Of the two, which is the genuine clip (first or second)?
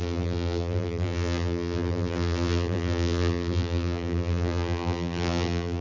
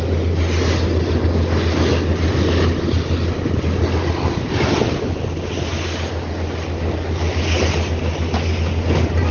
second